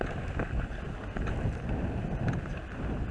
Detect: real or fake real